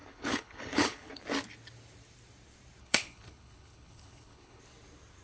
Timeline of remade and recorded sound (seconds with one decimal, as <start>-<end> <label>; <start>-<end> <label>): 0.0-1.2 remade; 1.2-2.8 recorded; 2.8-4.6 remade; 4.6-5.2 recorded